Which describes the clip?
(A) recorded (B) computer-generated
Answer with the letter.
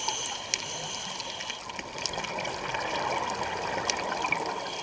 A